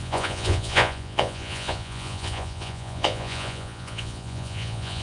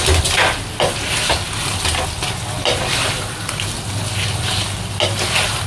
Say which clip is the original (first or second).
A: second